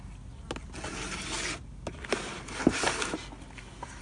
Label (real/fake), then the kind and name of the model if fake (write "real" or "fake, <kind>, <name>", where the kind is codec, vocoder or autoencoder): real